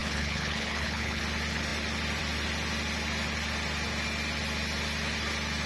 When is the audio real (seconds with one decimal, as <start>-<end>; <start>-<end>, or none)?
1.2-5.7